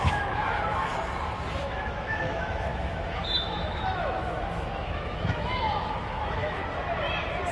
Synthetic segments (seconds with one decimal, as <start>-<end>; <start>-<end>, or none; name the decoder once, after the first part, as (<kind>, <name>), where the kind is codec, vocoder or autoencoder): 0.0-0.9 (autoencoder, DAC-VAE); 1.6-6.6